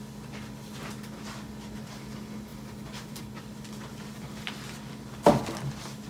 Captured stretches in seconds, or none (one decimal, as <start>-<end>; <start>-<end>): 0.0-2.5; 3.2-6.1